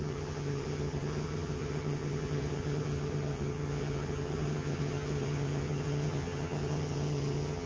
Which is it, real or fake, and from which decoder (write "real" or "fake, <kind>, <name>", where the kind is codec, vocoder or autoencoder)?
fake, vocoder, HiFi-GAN